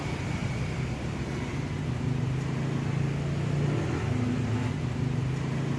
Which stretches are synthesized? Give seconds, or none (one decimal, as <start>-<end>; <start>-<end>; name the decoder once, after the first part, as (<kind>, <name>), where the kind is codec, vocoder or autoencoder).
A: none